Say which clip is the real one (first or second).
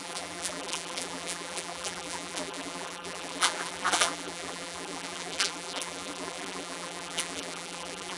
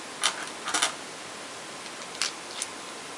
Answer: second